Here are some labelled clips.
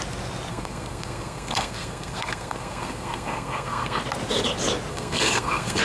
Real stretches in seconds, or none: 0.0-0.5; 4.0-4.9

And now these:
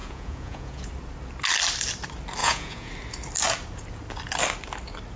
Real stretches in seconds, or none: 0.9-2.4; 2.9-5.2

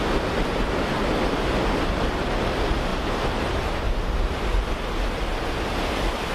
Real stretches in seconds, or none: 0.0-2.9; 4.7-6.3

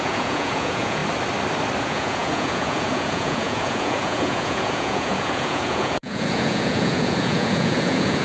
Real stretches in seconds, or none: 1.0-1.8

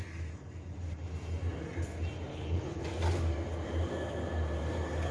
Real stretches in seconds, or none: 0.0-2.3; 2.8-5.1

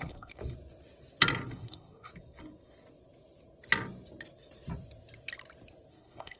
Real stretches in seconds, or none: 0.4-1.5; 2.1-5.9